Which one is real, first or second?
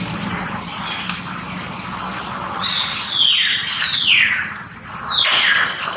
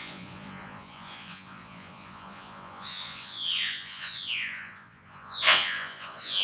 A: first